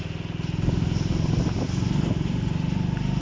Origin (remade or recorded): recorded